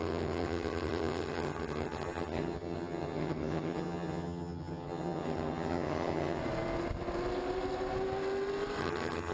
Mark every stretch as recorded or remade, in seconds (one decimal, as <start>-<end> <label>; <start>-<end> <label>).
0.0-6.4 remade; 6.4-8.8 recorded; 8.8-9.3 remade